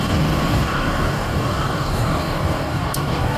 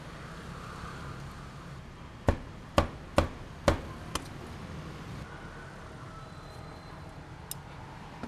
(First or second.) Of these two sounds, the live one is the second